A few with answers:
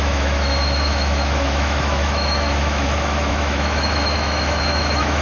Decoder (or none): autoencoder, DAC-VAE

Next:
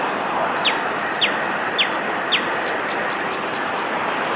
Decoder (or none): none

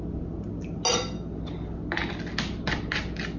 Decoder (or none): none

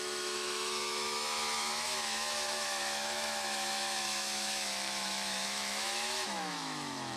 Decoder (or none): autoencoder, DAC-VAE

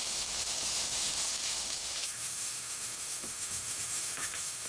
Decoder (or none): autoencoder, DAC-VAE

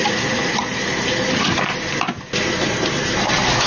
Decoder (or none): none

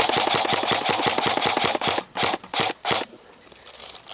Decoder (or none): none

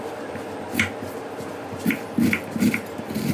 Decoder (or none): none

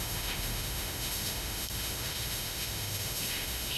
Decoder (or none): autoencoder, DAC-VAE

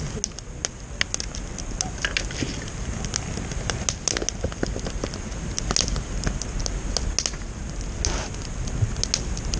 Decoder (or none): none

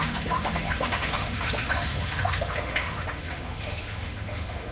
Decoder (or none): autoencoder, DAC-VAE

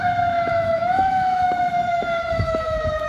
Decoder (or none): autoencoder, DAC-VAE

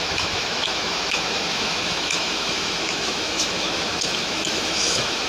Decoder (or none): autoencoder, DAC-VAE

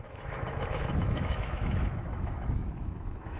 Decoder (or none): autoencoder, DAC-VAE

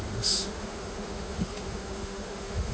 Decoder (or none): autoencoder, DAC-VAE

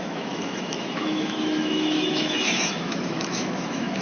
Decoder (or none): autoencoder, DAC-VAE